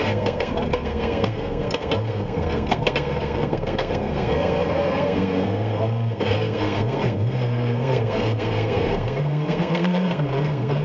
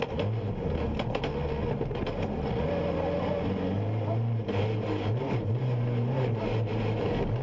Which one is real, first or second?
second